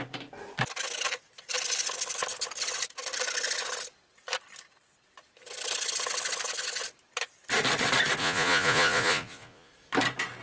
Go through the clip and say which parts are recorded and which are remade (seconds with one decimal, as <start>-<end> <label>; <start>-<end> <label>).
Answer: 0.0-8.2 recorded; 8.2-9.7 remade; 9.7-10.4 recorded